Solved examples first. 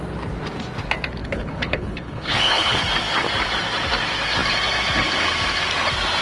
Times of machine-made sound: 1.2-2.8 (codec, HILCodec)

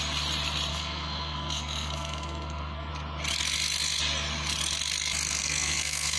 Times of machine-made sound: 0.7-2.9 (codec, SNAC); 5.4-6.2

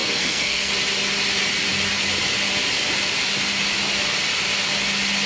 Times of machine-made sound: 0.0-0.7 (codec, SNAC)

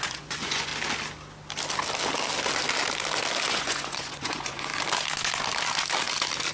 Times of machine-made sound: 0.0-0.7 (vocoder, Vocos); 3.5-4.7